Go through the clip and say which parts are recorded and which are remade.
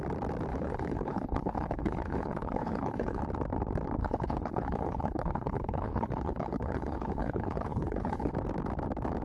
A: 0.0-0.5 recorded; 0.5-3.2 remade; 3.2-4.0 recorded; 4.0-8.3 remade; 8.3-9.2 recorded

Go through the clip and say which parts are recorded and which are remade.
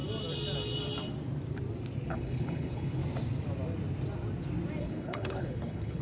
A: 0.0-2.1 recorded; 2.1-3.0 remade; 3.0-4.8 recorded; 4.8-6.0 remade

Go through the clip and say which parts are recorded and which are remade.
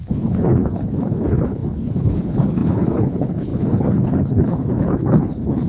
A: 0.0-5.7 remade